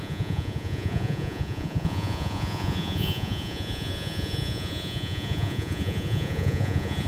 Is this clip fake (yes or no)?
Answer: yes